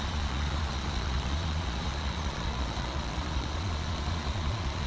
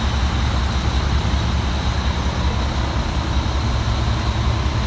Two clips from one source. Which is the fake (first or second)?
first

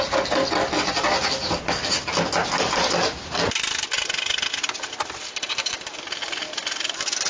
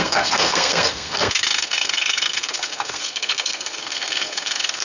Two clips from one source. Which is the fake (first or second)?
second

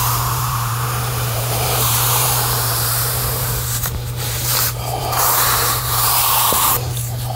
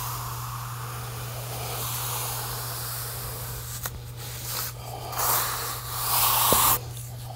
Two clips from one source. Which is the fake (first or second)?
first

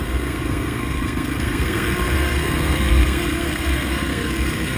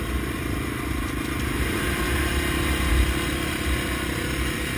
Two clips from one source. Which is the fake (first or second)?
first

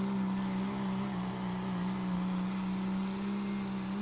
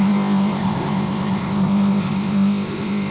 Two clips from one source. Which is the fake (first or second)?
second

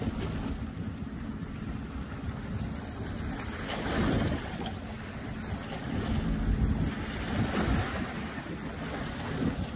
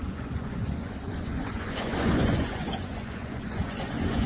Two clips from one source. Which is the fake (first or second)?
second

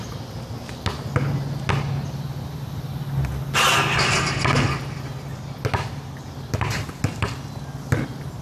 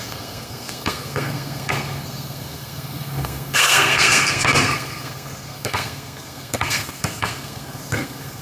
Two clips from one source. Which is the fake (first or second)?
second